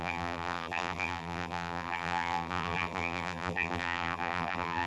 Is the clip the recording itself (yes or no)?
no